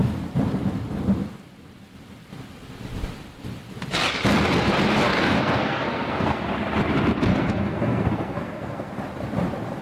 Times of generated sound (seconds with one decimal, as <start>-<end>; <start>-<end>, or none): 5.1-6.5; 7.3-8.9